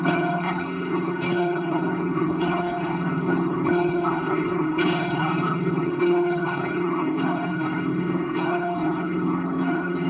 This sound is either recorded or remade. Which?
remade